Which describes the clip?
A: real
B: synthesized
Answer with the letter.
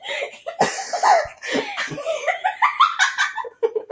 A